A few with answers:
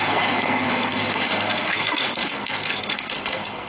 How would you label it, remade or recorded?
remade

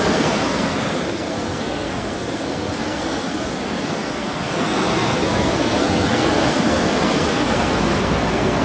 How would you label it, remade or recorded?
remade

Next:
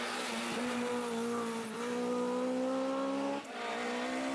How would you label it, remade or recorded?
recorded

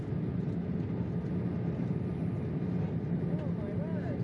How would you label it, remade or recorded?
recorded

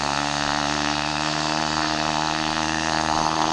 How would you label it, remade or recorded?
remade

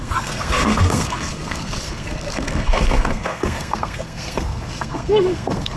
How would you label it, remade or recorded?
remade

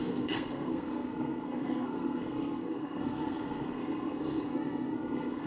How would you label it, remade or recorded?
remade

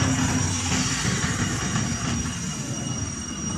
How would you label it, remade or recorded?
recorded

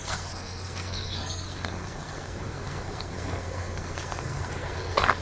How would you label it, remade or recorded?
remade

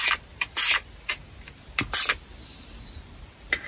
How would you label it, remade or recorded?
recorded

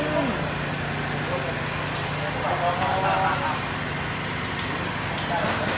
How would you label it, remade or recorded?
recorded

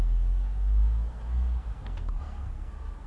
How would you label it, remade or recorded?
remade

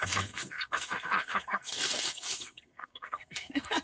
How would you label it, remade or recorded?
remade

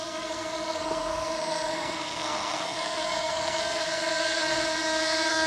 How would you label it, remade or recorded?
remade